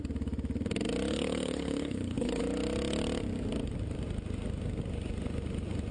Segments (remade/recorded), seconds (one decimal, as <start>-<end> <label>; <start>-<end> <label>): 0.0-1.1 recorded; 1.1-2.4 remade; 2.4-5.9 recorded